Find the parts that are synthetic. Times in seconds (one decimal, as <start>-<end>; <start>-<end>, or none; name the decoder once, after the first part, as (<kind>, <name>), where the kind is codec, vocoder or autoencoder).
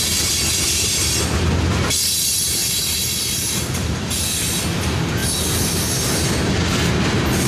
2.6-4.3 (vocoder, BigVGAN v2)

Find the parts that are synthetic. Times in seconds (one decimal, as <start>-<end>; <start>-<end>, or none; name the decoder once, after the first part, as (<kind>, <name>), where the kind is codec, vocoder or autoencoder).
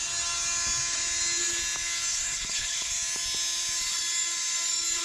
2.1-2.9 (codec, HILCodec)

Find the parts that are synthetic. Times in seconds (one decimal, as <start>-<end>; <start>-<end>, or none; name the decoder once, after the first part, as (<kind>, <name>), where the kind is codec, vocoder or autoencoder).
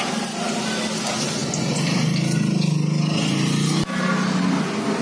none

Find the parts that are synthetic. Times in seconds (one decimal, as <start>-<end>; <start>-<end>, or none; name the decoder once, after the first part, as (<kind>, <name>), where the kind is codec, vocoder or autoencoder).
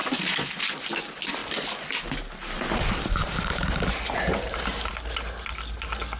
0.0-0.7 (vocoder, BigVGAN v2); 1.4-4.9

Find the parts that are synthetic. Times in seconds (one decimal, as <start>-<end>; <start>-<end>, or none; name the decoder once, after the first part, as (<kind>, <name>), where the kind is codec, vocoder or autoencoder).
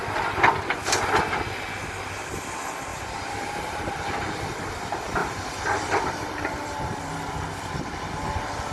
2.9-3.9 (vocoder, BigVGAN v2); 5.2-7.1